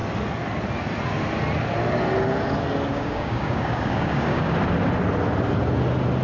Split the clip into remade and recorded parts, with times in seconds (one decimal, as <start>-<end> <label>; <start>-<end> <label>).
0.0-2.9 recorded; 2.9-4.5 remade; 4.5-6.2 recorded